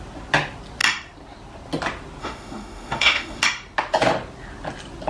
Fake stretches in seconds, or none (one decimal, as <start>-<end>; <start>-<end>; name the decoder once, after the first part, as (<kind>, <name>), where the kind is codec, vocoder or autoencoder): 2.2-3.4 (autoencoder, DAC-VAE)